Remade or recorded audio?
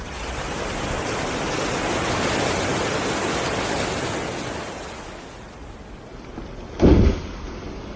recorded